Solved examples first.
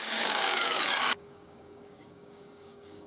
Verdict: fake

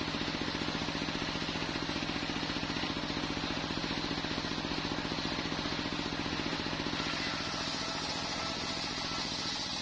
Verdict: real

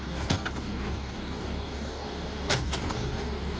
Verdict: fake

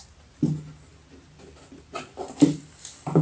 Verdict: real